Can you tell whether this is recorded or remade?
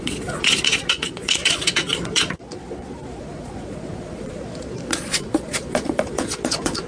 remade